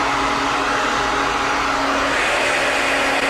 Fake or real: real